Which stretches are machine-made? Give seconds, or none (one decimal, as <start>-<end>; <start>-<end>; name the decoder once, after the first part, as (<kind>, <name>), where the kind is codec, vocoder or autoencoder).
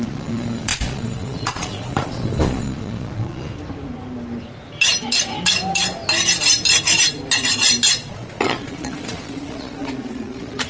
0.0-3.5 (vocoder, Vocos); 8.1-10.7